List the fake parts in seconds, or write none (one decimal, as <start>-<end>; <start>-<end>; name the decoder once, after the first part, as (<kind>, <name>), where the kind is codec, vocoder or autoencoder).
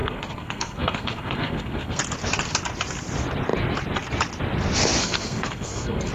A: 0.0-2.0 (codec, SNAC); 5.0-6.1